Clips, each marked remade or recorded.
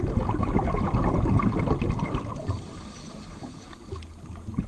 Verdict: recorded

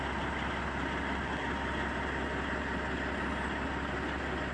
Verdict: recorded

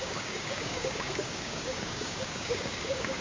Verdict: remade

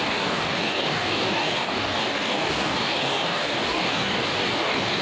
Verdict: remade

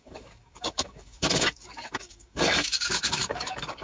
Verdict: remade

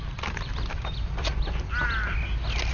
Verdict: recorded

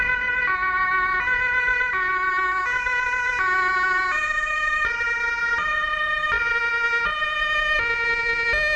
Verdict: recorded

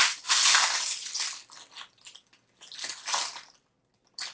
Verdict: recorded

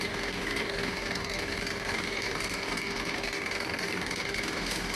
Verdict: remade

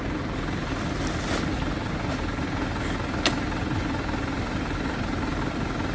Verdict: recorded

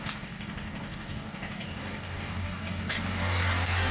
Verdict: remade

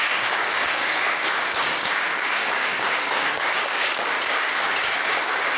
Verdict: remade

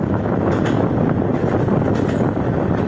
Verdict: recorded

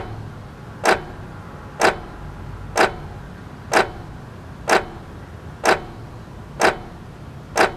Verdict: recorded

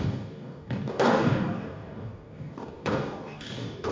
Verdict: remade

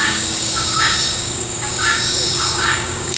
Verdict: remade